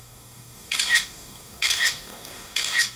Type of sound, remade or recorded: remade